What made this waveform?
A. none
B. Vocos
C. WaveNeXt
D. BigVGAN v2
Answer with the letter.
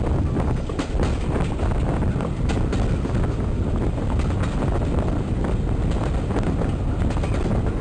A